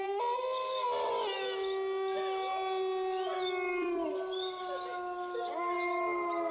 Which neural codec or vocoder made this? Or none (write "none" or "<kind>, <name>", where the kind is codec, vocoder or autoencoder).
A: none